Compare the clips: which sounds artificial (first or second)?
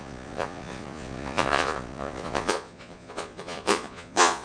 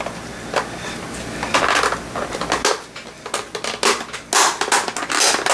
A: first